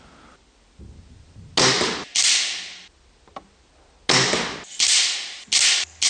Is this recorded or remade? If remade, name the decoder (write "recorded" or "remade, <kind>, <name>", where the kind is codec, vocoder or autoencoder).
recorded